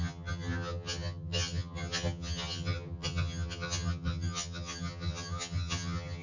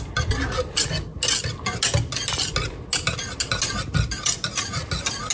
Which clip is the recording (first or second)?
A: second